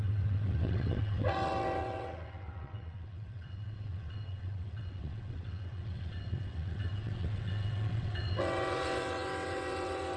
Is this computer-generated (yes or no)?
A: yes